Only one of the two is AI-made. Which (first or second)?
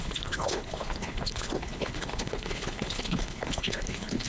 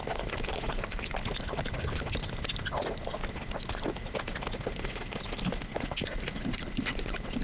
first